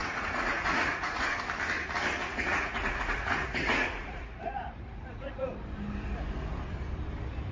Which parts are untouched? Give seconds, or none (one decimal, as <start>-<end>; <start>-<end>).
1.3-2.2; 5.6-7.5